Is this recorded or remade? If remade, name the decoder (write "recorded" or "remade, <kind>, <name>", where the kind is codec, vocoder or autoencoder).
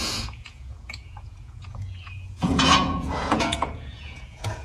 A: remade, vocoder, Vocos